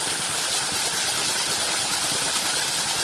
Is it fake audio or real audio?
fake